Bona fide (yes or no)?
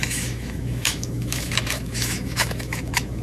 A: no